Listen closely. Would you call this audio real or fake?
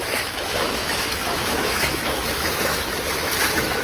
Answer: fake